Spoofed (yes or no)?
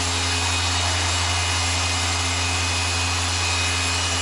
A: no